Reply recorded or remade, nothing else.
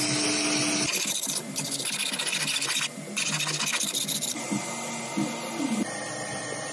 recorded